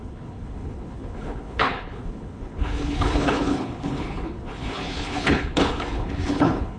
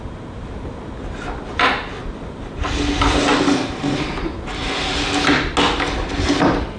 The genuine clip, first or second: second